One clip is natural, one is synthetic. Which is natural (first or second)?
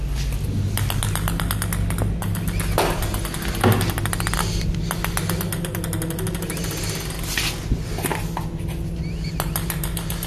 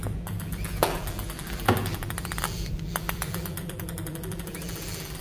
first